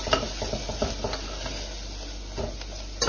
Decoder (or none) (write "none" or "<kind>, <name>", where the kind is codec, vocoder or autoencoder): none